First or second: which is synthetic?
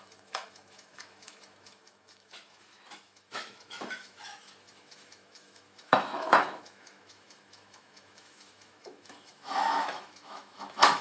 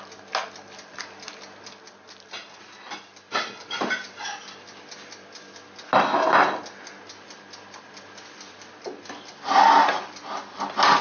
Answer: first